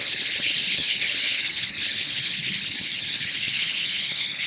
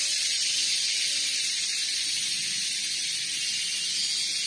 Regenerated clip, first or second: first